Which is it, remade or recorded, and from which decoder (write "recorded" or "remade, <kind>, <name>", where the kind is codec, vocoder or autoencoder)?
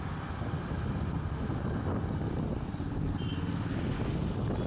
recorded